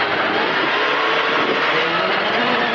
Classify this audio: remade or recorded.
recorded